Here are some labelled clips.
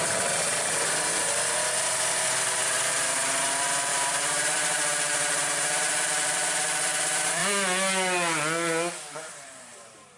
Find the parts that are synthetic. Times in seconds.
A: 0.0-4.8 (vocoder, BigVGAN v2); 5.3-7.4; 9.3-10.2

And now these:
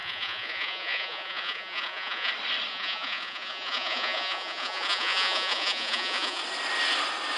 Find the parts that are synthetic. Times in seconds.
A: 0.0-2.3 (vocoder, Vocos); 2.7-6.4

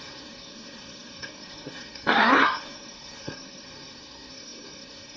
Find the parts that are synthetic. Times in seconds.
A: 0.0-5.2 (codec, SNAC)

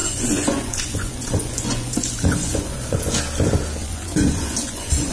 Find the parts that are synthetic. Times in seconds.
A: 0.0-3.1 (vocoder, Vocos); 3.8-5.1